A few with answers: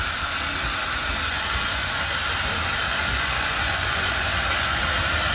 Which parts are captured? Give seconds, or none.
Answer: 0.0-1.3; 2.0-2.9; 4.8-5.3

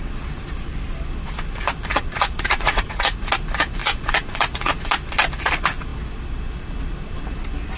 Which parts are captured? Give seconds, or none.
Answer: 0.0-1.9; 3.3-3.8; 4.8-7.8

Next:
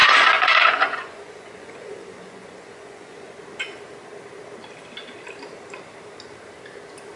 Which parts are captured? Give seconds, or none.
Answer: 3.4-7.2

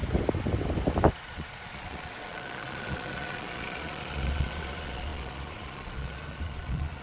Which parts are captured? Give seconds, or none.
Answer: 0.0-1.1